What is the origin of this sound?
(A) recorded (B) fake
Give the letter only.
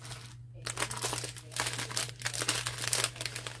A